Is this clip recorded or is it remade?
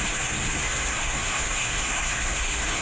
remade